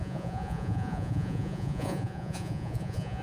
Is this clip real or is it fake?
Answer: fake